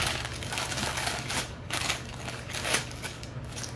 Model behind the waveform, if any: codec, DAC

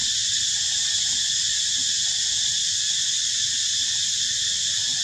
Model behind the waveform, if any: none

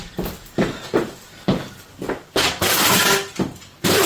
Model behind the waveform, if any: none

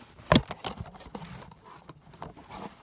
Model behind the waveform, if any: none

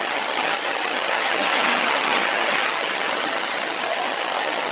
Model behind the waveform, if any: vocoder, HiFi-GAN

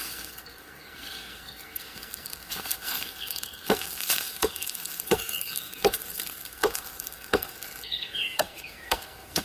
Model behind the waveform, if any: codec, SNAC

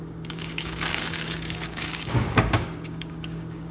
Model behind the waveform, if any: codec, DAC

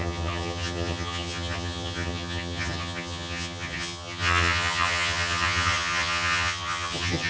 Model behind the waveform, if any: vocoder, HiFi-GAN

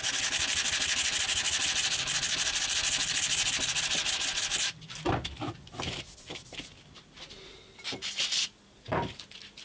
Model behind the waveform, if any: none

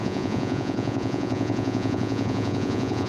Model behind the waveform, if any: vocoder, Vocos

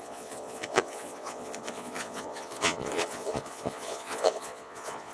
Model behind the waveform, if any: vocoder, Vocos